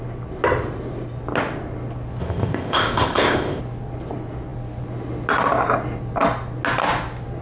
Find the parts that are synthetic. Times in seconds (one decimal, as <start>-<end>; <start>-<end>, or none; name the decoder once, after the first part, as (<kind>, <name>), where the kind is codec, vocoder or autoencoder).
2.2-3.6 (codec, ZipCodec)